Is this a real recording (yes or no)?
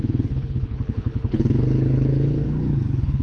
no